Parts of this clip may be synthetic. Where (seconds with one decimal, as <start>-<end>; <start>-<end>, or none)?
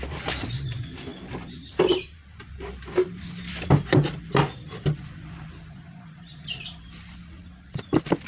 none